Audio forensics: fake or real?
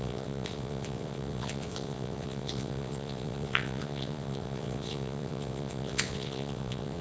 fake